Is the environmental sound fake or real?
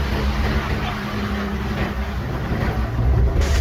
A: real